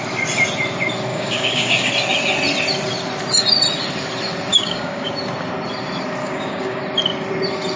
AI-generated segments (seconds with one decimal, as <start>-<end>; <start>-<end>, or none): 1.1-1.9; 4.5-5.1; 6.2-6.8